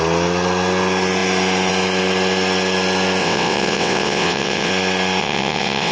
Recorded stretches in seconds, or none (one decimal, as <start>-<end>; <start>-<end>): 0.0-3.2; 4.7-5.2